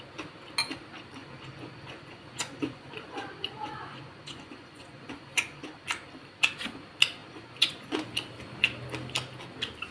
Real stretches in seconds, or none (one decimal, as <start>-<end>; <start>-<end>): 0.0-1.2; 5.8-7.2; 8.1-9.9